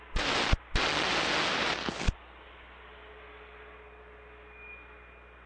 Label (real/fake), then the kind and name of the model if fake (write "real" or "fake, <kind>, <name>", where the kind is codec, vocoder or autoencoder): real